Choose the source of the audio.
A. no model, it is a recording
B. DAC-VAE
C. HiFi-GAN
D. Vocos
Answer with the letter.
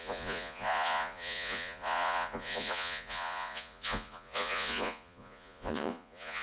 D